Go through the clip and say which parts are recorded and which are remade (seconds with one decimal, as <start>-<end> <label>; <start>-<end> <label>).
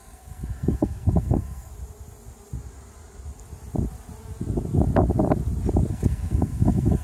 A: 0.0-1.7 remade; 1.7-5.9 recorded; 5.9-7.0 remade